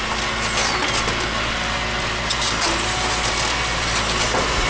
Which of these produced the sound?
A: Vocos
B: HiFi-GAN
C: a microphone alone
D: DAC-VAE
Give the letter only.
C